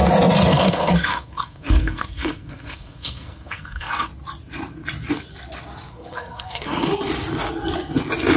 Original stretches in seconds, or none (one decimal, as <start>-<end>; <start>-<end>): 0.0-0.5; 4.1-5.9; 6.9-8.4